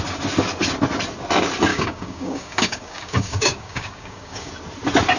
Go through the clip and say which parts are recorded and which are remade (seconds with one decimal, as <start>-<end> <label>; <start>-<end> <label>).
0.0-1.7 recorded; 1.7-4.5 remade; 4.5-5.2 recorded